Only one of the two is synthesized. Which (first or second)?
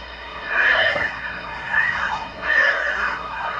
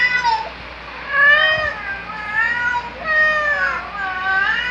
first